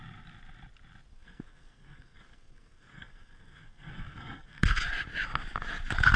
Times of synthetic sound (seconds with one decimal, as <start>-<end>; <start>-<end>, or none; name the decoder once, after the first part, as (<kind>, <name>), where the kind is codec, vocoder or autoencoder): 1.1-4.8 (codec, SNAC)